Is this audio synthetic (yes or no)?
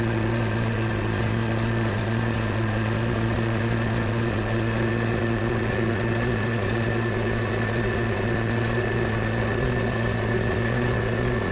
yes